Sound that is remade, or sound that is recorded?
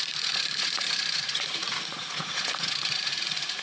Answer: remade